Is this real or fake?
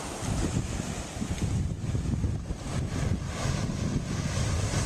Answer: real